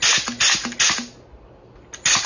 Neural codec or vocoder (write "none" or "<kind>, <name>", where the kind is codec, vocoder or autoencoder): none